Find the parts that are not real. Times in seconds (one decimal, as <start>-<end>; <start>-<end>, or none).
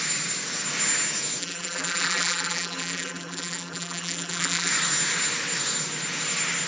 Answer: 1.4-4.7